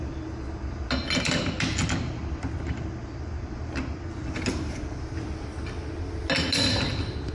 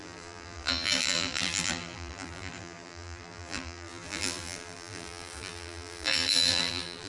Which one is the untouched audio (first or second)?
first